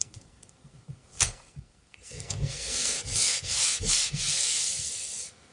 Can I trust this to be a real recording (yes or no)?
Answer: no